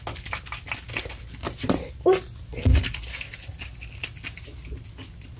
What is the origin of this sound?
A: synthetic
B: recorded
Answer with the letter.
B